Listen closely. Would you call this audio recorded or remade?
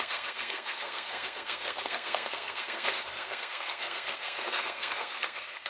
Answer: remade